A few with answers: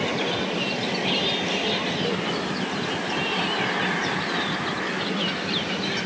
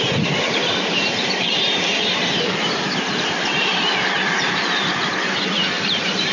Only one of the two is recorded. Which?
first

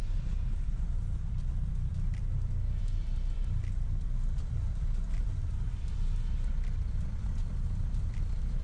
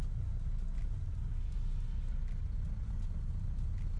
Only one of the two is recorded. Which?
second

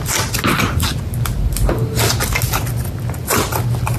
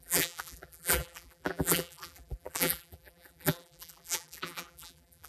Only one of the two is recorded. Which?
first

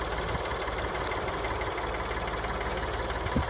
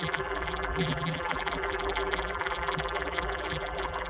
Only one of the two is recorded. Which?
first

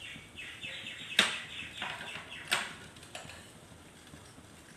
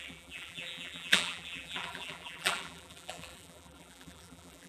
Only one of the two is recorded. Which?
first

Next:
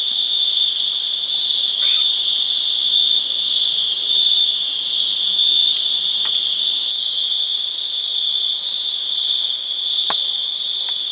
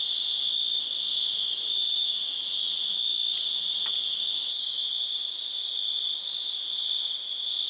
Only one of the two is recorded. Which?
second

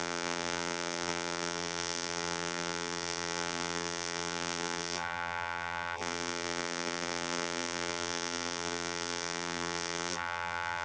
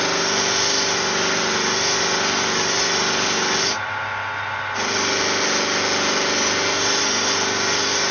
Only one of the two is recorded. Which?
second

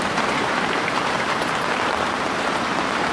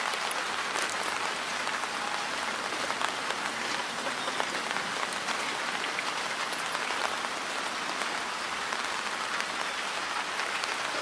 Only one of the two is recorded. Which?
second